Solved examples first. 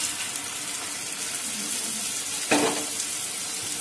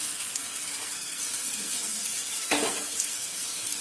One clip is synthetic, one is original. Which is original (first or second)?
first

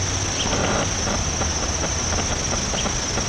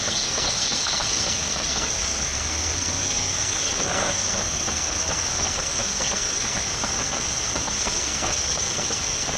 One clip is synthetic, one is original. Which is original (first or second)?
first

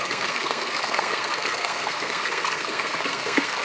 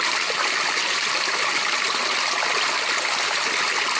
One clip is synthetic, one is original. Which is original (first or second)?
second